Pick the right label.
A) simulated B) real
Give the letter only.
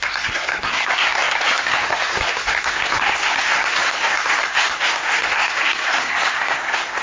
A